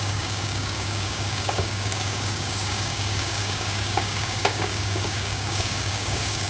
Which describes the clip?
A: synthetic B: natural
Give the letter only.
A